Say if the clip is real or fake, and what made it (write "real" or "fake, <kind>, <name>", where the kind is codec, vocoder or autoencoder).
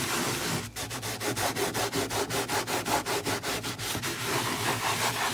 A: real